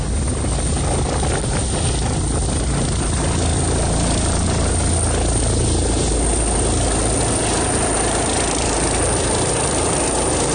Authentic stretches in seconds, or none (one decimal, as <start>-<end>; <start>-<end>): 0.0-10.5